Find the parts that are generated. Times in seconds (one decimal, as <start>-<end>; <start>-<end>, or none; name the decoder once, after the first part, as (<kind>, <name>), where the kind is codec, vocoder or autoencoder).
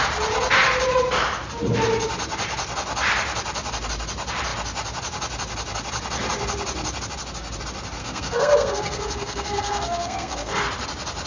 8.0-10.6 (codec, SNAC)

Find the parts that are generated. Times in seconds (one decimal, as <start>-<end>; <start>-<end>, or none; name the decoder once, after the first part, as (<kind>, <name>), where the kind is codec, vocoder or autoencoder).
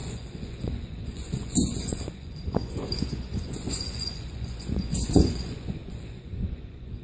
0.0-7.0 (vocoder, Vocos)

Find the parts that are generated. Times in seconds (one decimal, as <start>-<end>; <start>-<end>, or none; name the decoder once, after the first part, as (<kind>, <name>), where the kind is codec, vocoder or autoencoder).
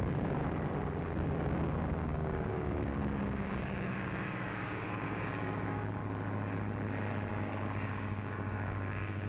0.0-0.4 (codec, DAC); 1.0-6.0; 7.3-9.3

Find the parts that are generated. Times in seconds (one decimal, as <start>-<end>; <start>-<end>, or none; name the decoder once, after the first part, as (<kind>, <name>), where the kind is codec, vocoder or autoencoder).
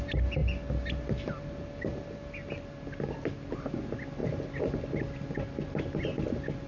none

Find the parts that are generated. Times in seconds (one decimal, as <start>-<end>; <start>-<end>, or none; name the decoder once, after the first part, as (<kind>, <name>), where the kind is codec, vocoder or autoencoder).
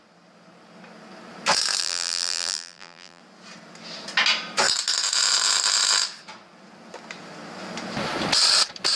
1.8-3.2 (vocoder, BigVGAN v2)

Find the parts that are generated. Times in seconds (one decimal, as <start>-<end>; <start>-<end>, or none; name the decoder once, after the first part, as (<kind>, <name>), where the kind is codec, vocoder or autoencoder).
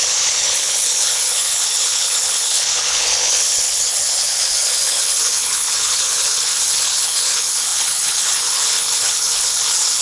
0.0-10.0 (codec, HILCodec)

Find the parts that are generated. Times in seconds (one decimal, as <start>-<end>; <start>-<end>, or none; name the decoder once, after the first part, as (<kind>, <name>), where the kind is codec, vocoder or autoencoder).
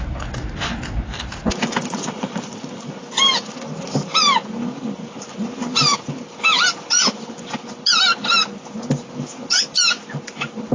1.8-2.9 (vocoder, Vocos)